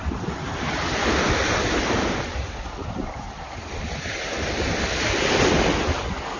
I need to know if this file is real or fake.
real